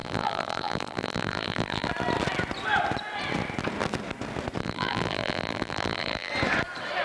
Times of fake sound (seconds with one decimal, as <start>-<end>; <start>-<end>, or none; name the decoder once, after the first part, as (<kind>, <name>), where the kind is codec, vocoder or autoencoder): 0.0-1.9 (vocoder, BigVGAN v2); 4.6-6.3